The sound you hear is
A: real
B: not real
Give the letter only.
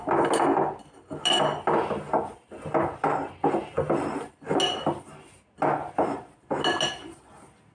A